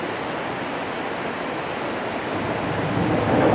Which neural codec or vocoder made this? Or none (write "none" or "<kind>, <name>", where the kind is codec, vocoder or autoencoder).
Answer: none